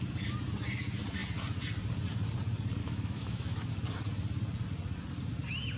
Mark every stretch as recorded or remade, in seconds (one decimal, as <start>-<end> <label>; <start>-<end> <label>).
0.0-2.8 recorded; 2.8-3.7 remade; 3.7-5.8 recorded